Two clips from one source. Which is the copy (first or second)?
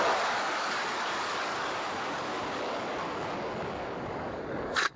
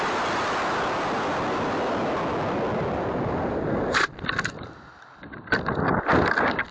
first